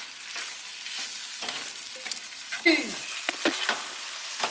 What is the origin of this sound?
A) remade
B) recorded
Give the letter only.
B